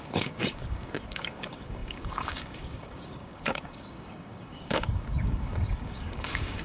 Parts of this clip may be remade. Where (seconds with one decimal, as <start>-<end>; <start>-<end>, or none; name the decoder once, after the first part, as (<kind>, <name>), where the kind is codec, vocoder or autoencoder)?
0.0-6.6 (codec, DAC)